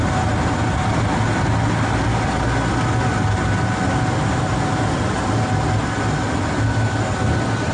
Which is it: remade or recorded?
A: recorded